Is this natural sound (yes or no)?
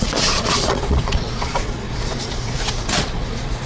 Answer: no